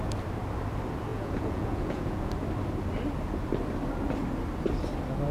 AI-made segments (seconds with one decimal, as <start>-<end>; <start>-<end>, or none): 1.1-2.3